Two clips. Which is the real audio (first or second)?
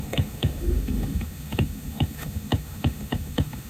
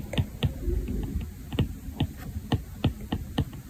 second